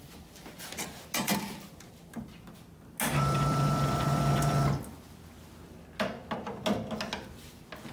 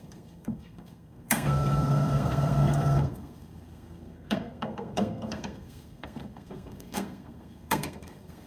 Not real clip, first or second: second